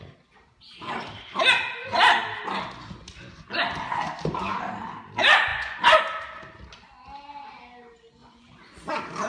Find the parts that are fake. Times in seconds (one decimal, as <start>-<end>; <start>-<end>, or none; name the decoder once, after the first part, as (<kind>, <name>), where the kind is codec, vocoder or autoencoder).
5.5-6.0 (vocoder, Vocos); 8.2-8.9